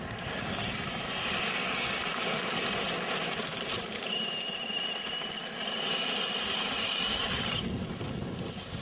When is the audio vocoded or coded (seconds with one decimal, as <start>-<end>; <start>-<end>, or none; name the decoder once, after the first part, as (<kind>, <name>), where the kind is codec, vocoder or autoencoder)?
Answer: none